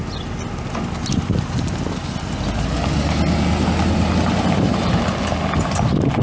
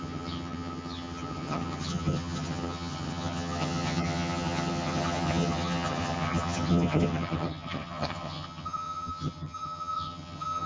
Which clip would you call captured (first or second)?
first